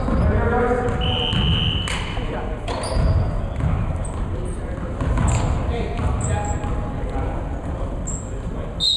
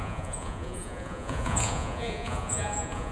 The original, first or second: first